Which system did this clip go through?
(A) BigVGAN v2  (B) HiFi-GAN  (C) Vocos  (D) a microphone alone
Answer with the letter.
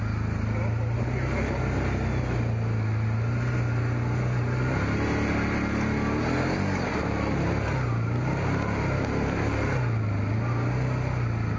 D